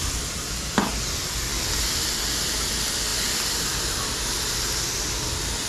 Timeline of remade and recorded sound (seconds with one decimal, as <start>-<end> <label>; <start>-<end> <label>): 0.0-5.7 recorded

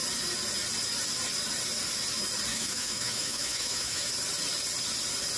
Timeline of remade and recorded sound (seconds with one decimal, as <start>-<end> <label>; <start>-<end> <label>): 0.0-2.5 recorded; 2.5-4.1 remade; 4.1-5.4 recorded